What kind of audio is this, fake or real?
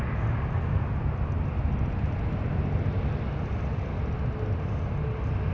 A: real